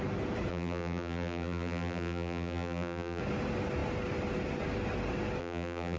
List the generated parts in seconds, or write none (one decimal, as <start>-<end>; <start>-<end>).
0.5-3.2; 5.4-6.0